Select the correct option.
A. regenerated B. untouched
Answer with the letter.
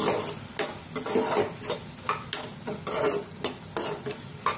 B